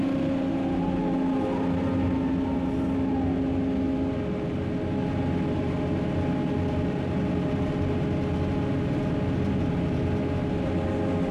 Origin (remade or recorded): recorded